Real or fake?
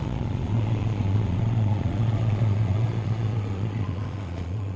fake